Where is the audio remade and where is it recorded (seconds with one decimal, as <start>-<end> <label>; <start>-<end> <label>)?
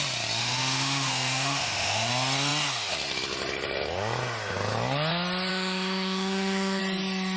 0.0-0.4 recorded; 0.4-2.1 remade; 2.1-5.5 recorded; 5.5-6.8 remade; 6.8-7.4 recorded